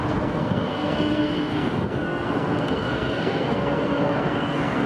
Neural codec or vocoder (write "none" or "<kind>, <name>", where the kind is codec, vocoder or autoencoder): codec, SNAC